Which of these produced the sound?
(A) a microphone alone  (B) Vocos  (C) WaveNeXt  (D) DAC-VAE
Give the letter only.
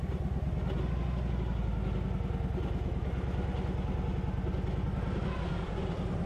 A